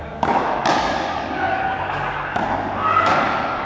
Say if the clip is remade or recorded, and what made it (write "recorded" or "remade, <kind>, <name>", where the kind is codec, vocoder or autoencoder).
remade, codec, DAC